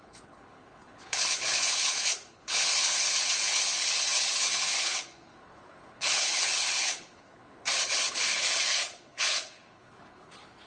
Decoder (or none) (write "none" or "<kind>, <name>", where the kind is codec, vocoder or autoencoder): codec, HILCodec